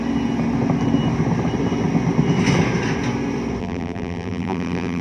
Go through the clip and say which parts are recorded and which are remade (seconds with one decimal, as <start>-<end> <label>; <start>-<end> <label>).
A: 0.0-3.6 recorded; 3.6-5.0 remade